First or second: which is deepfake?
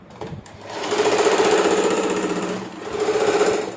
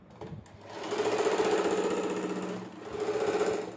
first